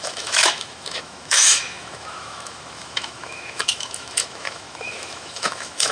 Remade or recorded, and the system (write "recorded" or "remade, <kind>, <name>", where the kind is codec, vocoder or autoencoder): remade, autoencoder, DAC-VAE